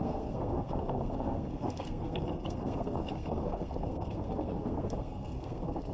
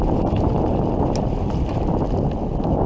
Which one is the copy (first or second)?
first